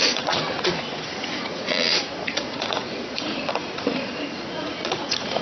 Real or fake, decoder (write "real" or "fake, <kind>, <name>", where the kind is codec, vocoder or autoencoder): fake, vocoder, Vocos